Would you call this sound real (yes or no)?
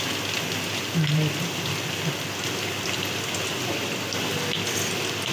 yes